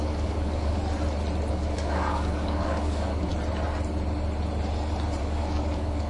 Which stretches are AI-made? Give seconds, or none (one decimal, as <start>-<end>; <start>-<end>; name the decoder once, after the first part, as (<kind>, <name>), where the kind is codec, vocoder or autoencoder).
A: 0.0-0.8 (codec, DAC); 1.5-3.3; 5.2-6.1